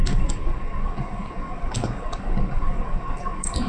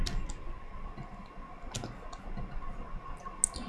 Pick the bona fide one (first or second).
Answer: second